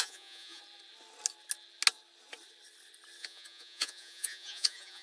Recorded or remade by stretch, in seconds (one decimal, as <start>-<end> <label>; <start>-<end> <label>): 0.0-0.6 remade; 0.6-3.2 recorded; 3.2-5.0 remade